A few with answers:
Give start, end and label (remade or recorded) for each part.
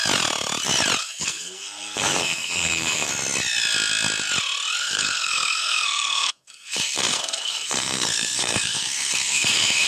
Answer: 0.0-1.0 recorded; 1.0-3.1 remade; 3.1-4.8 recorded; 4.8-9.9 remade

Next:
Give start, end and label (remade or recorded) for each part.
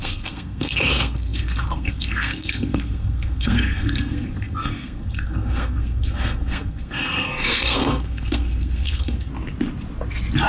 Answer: 0.0-9.3 remade; 9.3-10.5 recorded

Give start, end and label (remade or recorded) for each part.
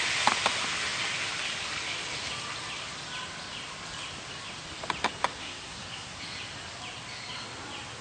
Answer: 0.0-5.4 recorded; 5.4-6.2 remade; 6.2-8.0 recorded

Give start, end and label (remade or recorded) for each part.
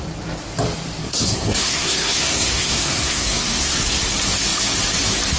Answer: 0.0-1.0 recorded; 1.0-3.8 remade; 3.8-5.4 recorded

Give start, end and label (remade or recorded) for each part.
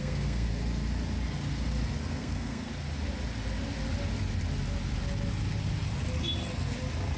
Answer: 0.0-0.5 remade; 0.5-2.1 recorded; 2.1-2.7 remade; 2.7-7.2 recorded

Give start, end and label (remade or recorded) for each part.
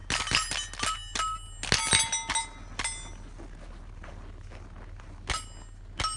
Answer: 0.0-6.2 recorded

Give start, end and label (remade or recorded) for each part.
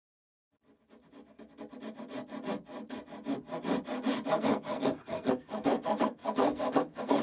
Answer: 0.0-4.3 recorded; 4.3-7.2 remade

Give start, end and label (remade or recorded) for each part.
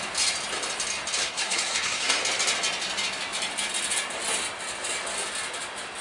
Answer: 0.0-1.2 recorded; 1.2-2.2 remade; 2.2-6.0 recorded